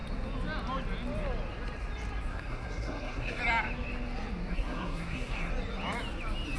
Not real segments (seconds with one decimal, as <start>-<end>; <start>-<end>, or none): 2.3-3.4; 4.5-5.5